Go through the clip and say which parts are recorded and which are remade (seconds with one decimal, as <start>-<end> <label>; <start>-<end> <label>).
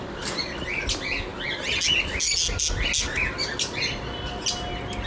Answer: 0.0-5.1 recorded